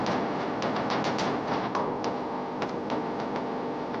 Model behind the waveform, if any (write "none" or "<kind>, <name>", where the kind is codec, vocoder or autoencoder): none